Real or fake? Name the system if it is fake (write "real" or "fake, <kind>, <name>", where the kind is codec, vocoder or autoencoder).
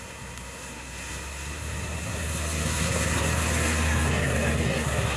fake, codec, SNAC